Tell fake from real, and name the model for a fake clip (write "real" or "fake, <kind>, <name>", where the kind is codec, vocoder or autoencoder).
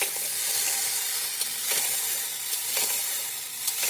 real